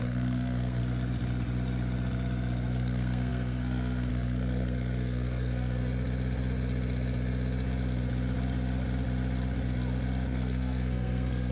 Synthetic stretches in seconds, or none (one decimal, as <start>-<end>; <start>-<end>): 0.0-0.8; 2.7-5.8; 10.3-11.5